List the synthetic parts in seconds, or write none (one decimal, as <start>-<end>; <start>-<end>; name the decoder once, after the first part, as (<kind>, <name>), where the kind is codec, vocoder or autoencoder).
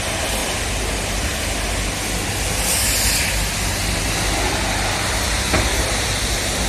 0.0-1.3 (vocoder, BigVGAN v2); 5.3-6.7